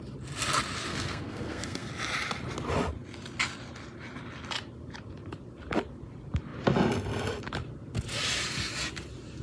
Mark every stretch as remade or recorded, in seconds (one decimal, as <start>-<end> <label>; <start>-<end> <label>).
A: 0.0-0.9 recorded; 0.9-1.9 remade; 1.9-9.4 recorded